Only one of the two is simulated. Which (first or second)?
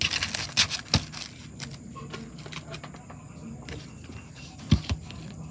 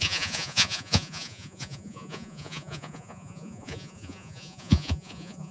second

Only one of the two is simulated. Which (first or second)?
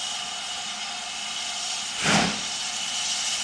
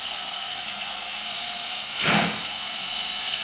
second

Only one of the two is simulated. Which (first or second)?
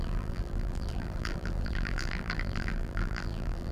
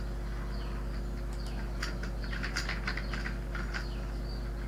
first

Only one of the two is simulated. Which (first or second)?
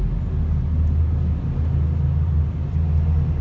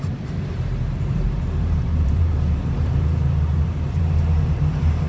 second